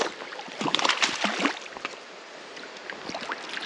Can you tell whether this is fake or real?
real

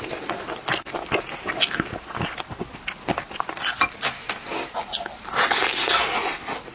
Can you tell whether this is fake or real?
real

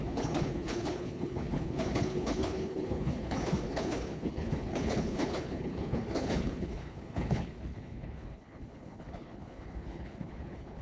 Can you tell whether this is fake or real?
fake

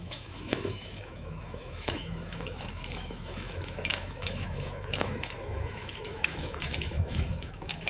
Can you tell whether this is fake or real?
fake